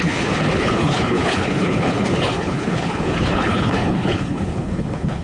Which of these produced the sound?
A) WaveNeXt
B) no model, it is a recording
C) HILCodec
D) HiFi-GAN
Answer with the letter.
C